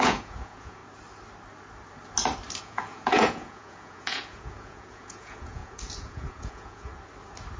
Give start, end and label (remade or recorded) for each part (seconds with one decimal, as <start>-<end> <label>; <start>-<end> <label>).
0.0-0.8 remade; 0.8-2.6 recorded; 2.6-6.9 remade; 6.9-7.6 recorded